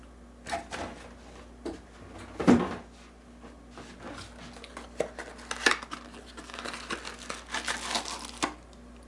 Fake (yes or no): no